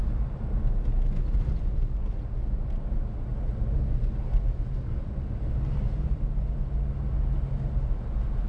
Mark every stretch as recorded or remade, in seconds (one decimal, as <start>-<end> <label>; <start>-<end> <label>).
0.0-8.5 recorded